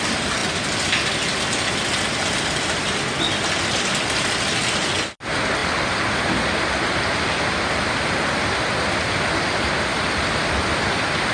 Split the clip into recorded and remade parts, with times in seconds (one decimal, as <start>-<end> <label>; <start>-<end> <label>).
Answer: 0.0-11.3 recorded